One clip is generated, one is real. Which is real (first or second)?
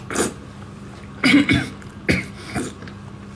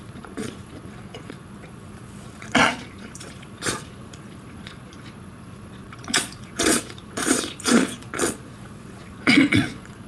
first